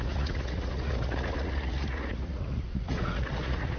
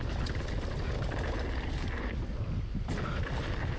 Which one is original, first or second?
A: second